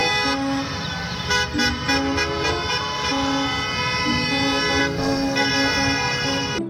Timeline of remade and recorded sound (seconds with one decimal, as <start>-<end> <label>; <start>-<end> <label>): 0.0-4.8 recorded; 4.8-5.5 remade; 5.5-6.7 recorded